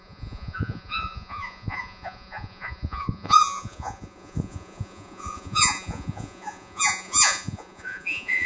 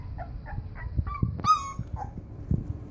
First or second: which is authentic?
second